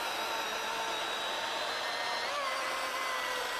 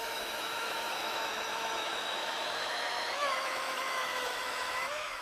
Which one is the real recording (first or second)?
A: first